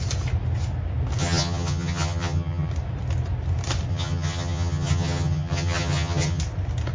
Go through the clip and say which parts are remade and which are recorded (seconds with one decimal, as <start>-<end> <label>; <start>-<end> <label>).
0.0-1.2 recorded; 1.2-2.7 remade; 2.7-3.9 recorded; 3.9-6.4 remade; 6.4-6.9 recorded